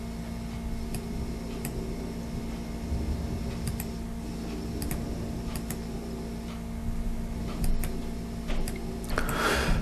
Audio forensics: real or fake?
real